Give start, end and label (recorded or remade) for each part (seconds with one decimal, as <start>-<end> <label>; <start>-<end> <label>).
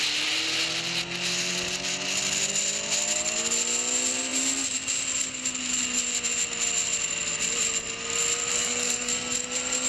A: 0.0-8.5 recorded; 8.5-9.1 remade; 9.1-9.9 recorded